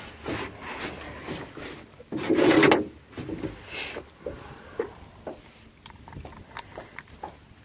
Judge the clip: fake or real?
real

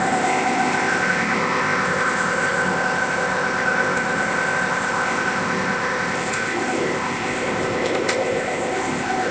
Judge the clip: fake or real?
fake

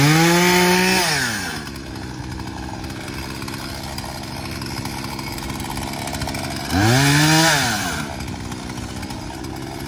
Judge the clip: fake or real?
real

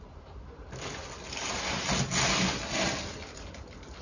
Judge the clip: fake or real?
real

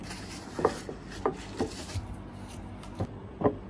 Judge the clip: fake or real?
real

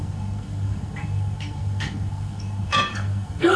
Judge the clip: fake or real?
fake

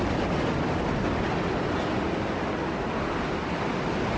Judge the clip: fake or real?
real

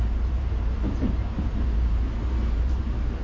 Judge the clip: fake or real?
fake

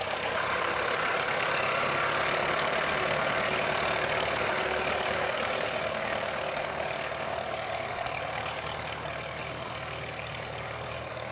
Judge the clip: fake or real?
fake